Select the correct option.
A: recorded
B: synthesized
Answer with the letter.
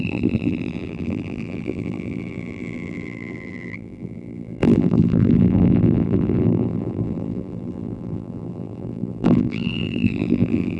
B